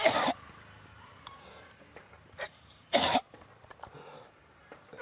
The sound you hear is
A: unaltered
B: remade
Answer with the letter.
B